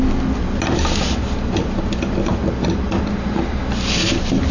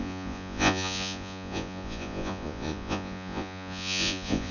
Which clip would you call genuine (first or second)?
first